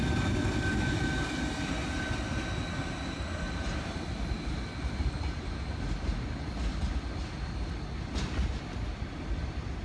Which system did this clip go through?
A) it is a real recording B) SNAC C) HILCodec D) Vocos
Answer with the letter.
A